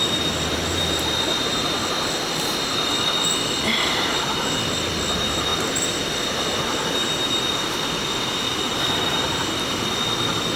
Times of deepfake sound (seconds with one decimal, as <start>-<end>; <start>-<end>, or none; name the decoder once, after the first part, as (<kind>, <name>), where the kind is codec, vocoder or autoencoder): none